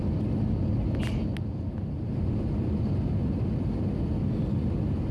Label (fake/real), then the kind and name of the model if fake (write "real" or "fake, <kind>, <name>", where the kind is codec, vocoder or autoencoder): real